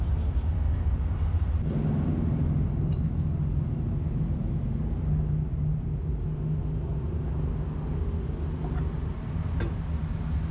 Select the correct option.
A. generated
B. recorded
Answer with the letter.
B